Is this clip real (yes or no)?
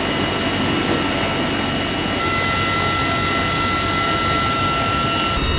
yes